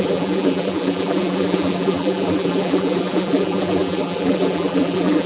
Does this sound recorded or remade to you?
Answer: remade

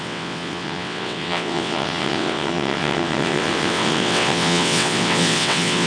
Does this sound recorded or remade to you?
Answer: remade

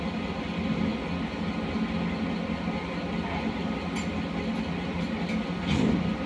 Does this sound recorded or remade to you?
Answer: recorded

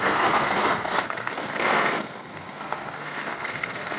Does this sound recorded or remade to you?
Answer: remade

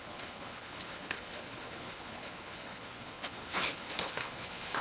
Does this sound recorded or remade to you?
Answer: remade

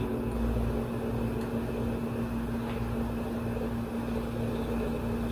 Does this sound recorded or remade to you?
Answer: recorded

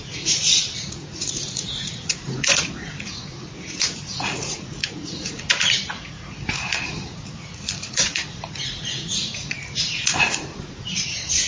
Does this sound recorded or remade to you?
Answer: remade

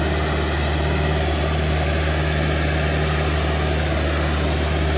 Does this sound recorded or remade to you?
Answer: recorded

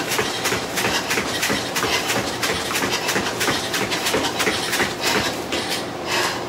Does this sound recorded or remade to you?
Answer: recorded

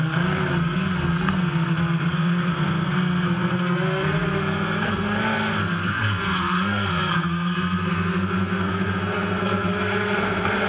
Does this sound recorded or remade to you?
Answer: remade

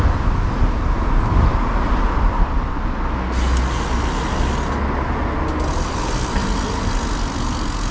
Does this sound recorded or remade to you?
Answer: recorded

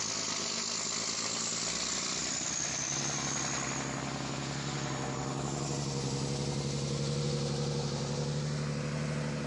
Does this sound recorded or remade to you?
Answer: recorded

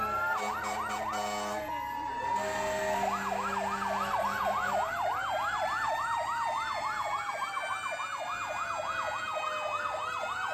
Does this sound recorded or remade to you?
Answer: recorded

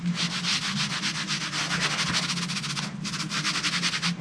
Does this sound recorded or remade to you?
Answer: recorded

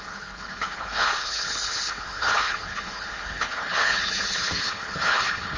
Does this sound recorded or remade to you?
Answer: remade